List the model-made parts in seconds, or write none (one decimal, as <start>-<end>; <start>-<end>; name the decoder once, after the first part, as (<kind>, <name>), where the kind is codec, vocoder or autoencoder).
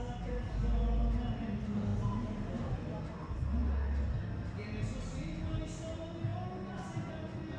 none